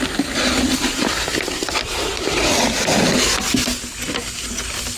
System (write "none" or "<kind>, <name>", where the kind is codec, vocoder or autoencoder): none